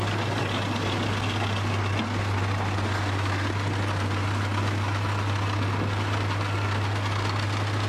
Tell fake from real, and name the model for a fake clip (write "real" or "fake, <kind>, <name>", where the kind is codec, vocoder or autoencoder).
real